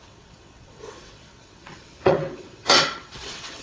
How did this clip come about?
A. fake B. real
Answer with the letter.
A